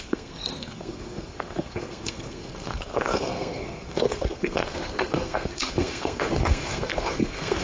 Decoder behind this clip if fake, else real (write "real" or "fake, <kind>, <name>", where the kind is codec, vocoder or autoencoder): fake, codec, SNAC